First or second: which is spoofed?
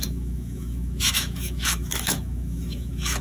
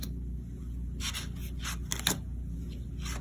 first